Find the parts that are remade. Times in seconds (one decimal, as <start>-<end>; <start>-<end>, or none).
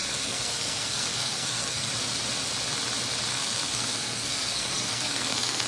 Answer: 0.0-1.9; 3.3-5.7